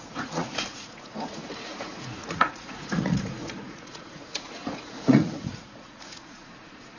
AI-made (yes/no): yes